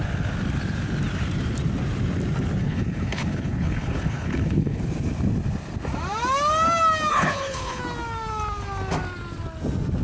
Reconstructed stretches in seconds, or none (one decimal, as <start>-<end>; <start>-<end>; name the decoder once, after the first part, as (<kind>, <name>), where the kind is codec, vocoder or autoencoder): 2.6-4.8 (codec, HILCodec); 7.1-7.8